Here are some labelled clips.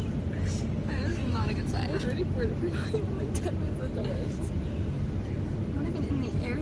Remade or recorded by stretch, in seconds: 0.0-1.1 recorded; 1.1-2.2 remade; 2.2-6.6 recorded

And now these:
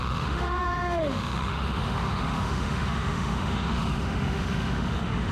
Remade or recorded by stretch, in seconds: 0.0-5.3 remade